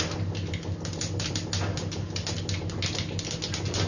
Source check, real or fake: real